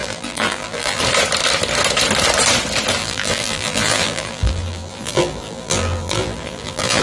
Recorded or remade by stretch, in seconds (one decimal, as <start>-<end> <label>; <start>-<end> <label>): 0.0-1.0 remade; 1.0-3.0 recorded; 3.0-7.0 remade